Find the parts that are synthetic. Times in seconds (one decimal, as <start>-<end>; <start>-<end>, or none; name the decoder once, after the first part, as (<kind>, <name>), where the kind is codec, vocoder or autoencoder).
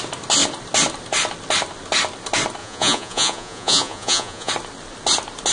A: 2.6-4.5 (vocoder, Vocos)